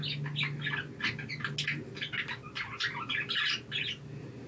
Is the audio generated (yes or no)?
no